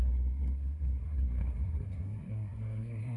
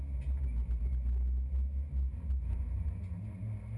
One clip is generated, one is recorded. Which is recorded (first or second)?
second